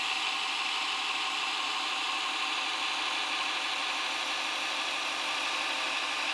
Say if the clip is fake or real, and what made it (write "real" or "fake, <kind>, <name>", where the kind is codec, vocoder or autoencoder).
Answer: real